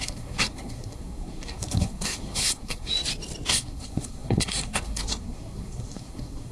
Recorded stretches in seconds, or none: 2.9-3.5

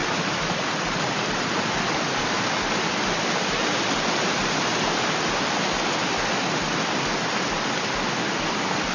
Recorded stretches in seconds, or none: 0.0-8.9

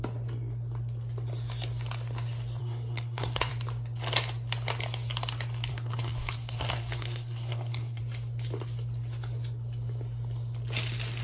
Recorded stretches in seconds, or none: 0.0-2.6; 3.5-5.7; 8.0-11.2

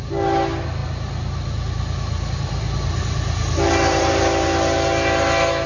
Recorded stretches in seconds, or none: 0.0-5.7